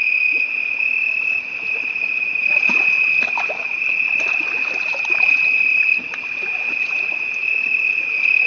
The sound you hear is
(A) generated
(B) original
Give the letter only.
B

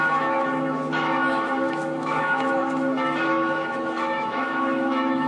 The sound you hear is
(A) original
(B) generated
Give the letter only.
B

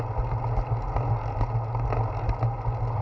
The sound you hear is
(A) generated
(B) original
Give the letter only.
B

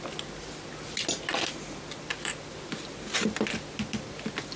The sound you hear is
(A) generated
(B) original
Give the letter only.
B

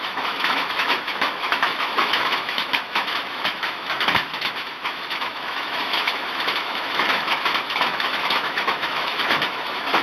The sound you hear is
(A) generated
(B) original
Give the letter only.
A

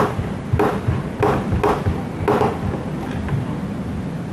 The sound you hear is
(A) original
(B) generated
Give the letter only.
A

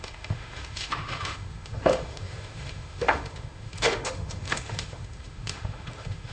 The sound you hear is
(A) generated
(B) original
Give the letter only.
A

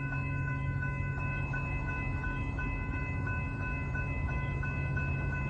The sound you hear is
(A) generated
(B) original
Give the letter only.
A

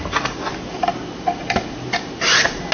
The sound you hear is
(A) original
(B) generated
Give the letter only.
A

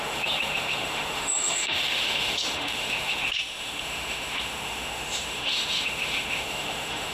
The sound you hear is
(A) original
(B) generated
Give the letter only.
B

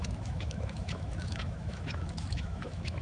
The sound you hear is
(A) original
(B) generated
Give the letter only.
B